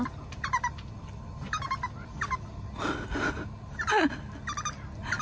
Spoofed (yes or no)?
no